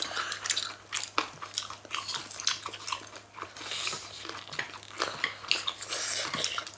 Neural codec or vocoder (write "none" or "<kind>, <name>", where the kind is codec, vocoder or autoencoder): none